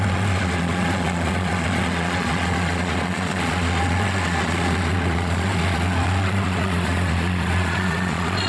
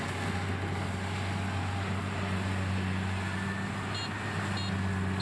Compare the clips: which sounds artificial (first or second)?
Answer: first